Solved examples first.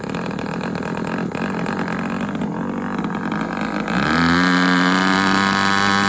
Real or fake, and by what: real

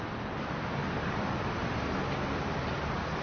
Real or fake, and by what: real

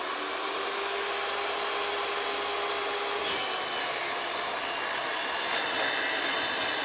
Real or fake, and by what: real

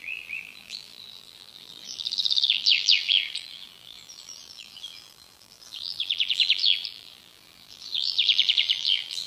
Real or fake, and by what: fake, vocoder, BigVGAN v2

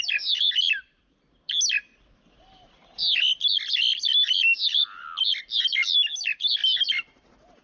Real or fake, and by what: real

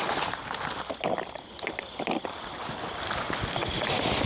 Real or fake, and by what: real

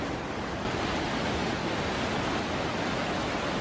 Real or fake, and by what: real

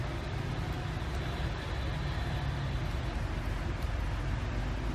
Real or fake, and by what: real